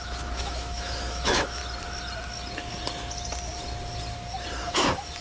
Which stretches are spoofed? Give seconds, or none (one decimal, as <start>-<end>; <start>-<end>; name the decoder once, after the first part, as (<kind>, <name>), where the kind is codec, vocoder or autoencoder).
0.0-1.6 (autoencoder, DAC-VAE); 4.7-5.2